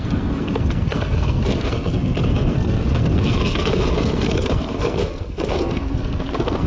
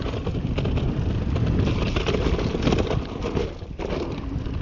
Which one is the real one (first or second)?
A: second